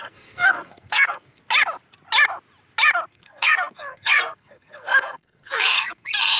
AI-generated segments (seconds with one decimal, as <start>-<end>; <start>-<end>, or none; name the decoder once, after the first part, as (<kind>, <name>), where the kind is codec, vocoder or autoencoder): 0.0-1.4 (codec, SNAC); 3.1-6.4

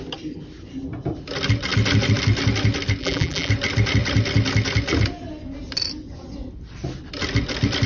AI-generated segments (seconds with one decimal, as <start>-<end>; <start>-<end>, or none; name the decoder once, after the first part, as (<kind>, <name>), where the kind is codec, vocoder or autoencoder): 3.0-3.5 (vocoder, BigVGAN v2)

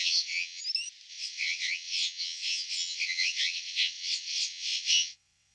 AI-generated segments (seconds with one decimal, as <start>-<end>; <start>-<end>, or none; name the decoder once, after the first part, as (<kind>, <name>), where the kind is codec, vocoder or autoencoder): 0.0-0.6 (vocoder, WaveNeXt); 1.1-5.5

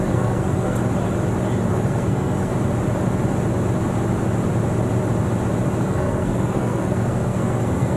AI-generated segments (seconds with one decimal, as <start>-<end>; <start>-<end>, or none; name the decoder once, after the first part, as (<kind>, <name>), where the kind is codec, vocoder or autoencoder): 0.0-0.8 (codec, SNAC); 1.7-2.5; 5.8-8.0

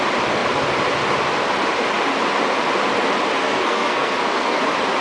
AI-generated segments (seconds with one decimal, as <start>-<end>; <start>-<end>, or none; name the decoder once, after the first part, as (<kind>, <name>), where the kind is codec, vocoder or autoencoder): 3.4-4.6 (codec, SNAC)